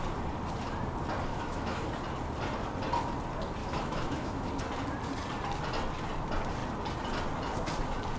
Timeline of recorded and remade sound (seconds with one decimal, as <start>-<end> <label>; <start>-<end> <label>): 0.0-1.3 recorded; 1.3-1.8 remade; 1.8-3.6 recorded; 3.6-4.5 remade; 4.5-8.2 recorded